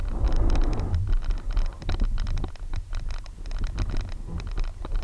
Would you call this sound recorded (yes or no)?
yes